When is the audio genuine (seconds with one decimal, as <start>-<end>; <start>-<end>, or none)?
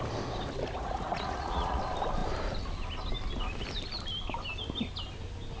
0.0-0.8; 1.8-5.6